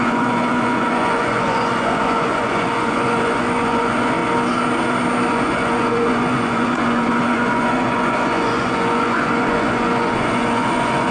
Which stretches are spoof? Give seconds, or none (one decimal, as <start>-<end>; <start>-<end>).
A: 0.0-4.2; 5.3-11.1